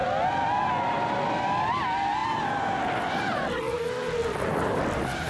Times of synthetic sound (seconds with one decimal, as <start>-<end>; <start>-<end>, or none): none